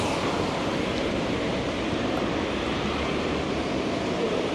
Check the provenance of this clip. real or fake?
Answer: fake